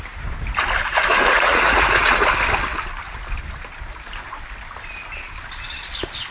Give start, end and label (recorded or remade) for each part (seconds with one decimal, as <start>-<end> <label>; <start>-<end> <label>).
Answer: 0.0-0.9 recorded; 0.9-2.2 remade; 2.2-6.3 recorded